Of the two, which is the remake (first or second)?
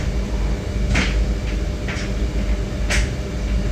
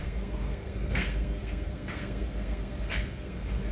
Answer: second